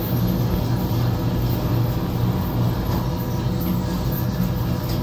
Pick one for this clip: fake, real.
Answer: real